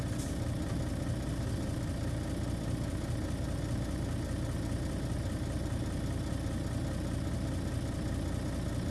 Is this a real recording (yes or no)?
yes